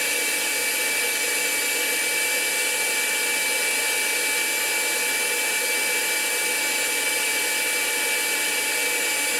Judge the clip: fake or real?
real